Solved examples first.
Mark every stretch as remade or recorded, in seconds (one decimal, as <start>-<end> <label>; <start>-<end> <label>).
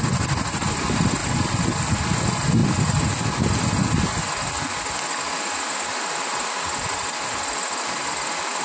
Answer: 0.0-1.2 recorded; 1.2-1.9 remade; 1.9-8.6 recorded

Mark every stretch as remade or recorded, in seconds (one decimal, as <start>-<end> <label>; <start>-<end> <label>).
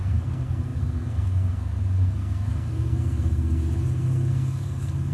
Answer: 0.0-5.1 remade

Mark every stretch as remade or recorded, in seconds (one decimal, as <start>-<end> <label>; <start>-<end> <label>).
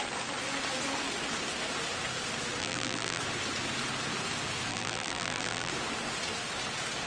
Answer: 0.0-2.6 recorded; 2.6-3.2 remade; 3.2-4.7 recorded; 4.7-5.7 remade; 5.7-7.1 recorded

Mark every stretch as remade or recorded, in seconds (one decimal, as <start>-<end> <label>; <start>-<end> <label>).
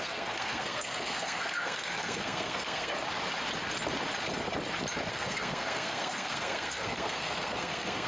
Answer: 0.0-2.9 remade; 2.9-5.1 recorded; 5.1-8.1 remade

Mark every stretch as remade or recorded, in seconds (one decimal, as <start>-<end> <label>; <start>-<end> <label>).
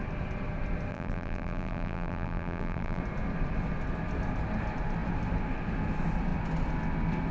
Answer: 0.0-0.9 recorded; 0.9-3.0 remade; 3.0-7.3 recorded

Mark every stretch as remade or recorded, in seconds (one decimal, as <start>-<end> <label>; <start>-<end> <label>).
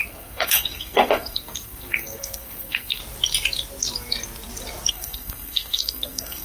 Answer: 0.0-3.0 remade; 3.0-4.9 recorded; 4.9-6.4 remade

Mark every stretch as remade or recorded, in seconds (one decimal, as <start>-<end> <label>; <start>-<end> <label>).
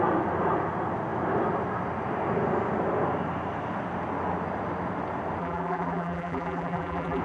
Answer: 0.0-5.4 recorded; 5.4-7.2 remade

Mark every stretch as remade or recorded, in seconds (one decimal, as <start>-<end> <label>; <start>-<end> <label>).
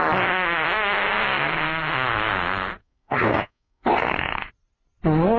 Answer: 0.0-2.8 recorded; 2.8-4.5 remade; 4.5-5.4 recorded